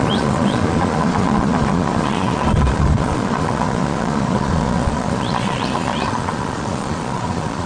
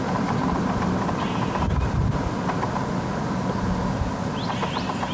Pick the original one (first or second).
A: second